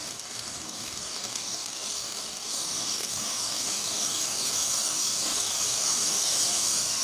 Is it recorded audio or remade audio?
remade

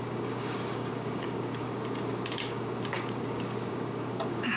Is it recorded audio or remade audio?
remade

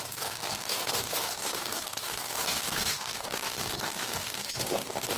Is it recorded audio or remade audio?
remade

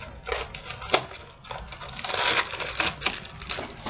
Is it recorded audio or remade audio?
recorded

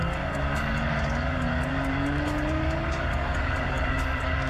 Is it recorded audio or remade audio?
remade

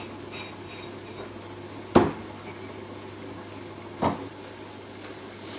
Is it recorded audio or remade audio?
recorded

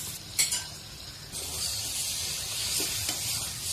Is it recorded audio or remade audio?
recorded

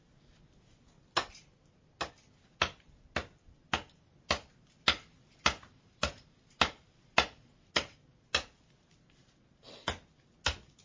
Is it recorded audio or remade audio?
recorded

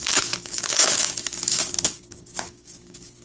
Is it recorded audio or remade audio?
remade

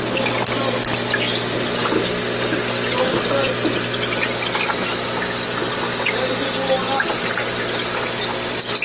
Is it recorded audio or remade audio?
recorded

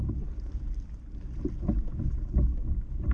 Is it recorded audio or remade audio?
recorded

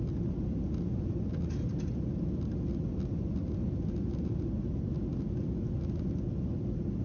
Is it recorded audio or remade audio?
recorded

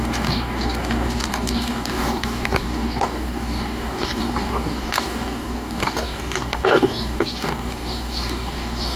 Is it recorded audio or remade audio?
remade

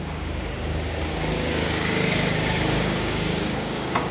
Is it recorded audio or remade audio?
remade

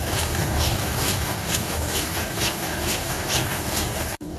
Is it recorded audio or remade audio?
remade